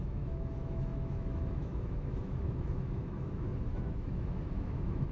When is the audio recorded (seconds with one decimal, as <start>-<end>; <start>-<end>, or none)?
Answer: none